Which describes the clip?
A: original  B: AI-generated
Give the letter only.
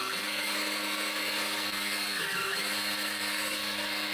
B